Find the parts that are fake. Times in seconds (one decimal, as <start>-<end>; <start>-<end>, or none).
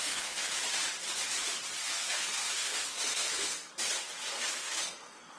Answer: 0.0-0.6; 1.9-3.7; 4.3-5.4